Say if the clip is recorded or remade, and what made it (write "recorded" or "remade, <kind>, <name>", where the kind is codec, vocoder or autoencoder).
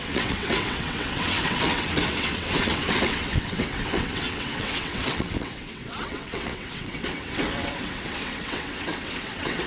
remade, vocoder, WaveNeXt